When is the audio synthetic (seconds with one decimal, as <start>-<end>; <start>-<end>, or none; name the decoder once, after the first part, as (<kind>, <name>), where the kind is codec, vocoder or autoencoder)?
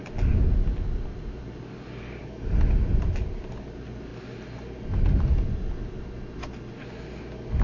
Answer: none